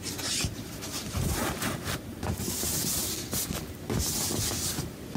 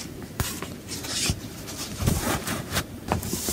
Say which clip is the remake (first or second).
second